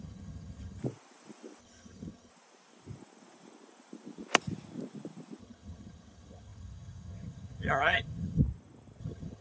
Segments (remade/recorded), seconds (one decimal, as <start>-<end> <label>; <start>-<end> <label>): 0.0-0.8 remade; 0.8-1.6 recorded; 1.6-2.3 remade; 2.3-5.4 recorded; 5.4-8.4 remade; 8.4-9.0 recorded; 9.0-9.4 remade

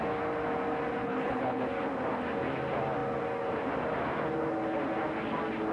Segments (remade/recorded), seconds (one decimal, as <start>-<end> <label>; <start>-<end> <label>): 0.0-1.0 recorded; 1.0-1.6 remade; 1.6-5.7 recorded